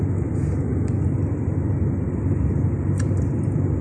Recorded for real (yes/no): yes